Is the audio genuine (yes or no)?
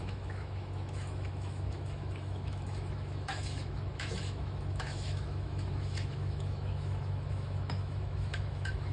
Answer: no